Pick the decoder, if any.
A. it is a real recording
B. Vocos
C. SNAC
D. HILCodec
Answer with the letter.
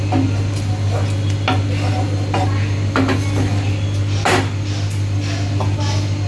A